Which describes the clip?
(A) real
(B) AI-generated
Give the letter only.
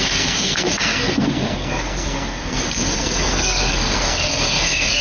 B